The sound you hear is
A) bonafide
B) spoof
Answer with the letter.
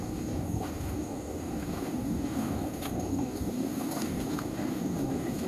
B